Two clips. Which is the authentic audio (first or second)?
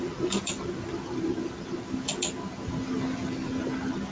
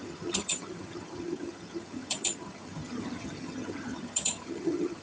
first